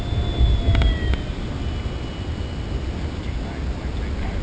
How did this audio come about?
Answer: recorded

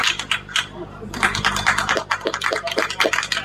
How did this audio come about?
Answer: recorded